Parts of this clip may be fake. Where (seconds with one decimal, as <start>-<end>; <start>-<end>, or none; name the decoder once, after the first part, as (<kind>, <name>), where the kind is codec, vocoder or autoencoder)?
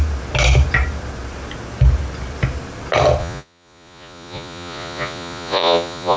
3.2-6.2 (vocoder, Vocos)